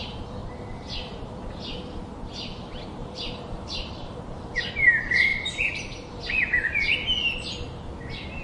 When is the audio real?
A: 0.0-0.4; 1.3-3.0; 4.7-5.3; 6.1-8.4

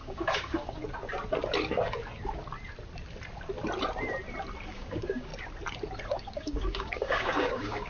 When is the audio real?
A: 0.8-4.7; 5.3-6.1

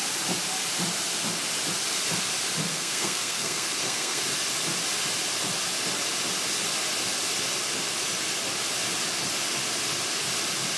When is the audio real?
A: 0.0-2.7; 4.2-10.8

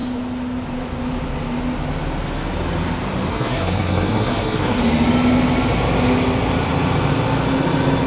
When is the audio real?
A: 0.0-3.3; 4.8-8.1

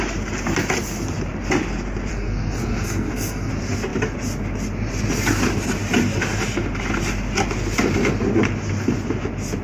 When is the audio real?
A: 0.0-2.1; 3.5-9.6

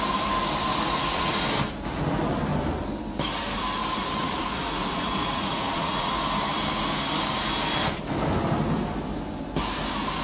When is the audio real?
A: 0.0-0.7; 1.4-4.2; 6.1-10.2

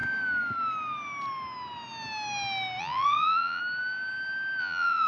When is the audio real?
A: 0.0-2.8; 3.6-4.6

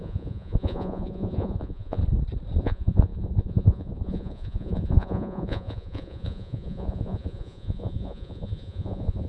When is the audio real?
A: 2.0-2.6